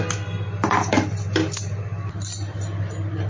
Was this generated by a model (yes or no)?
yes